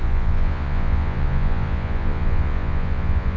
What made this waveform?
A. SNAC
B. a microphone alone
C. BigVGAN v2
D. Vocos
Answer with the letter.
D